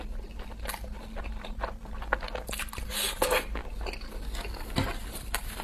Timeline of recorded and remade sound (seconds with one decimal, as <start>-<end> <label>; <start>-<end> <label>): 0.0-5.6 recorded